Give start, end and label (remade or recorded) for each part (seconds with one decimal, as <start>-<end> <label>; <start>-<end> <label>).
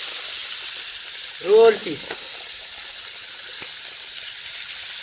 0.0-5.0 recorded